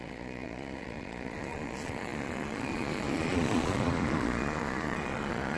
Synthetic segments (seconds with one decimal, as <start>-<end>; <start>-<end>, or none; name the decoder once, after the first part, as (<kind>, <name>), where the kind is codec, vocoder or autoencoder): 0.0-5.6 (vocoder, Vocos)